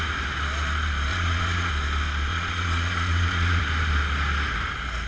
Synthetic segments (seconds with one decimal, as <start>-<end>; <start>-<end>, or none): 1.1-1.7; 2.3-3.6